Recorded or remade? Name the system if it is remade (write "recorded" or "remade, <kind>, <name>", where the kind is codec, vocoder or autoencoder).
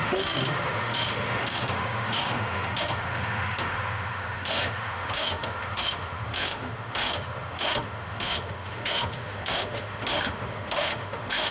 remade, autoencoder, DAC-VAE